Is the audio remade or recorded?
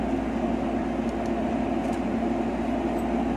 recorded